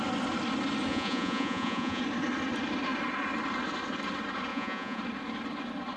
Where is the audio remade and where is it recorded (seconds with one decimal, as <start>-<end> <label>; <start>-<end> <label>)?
0.0-0.9 recorded; 0.9-2.0 remade; 2.0-4.5 recorded; 4.5-5.0 remade; 5.0-6.0 recorded